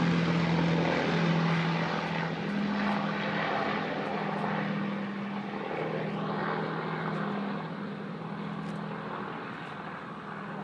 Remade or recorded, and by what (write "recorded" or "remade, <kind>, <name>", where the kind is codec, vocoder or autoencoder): recorded